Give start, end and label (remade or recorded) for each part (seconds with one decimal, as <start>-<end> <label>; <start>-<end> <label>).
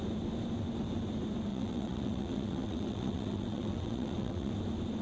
0.0-1.5 recorded; 1.5-4.5 remade; 4.5-5.0 recorded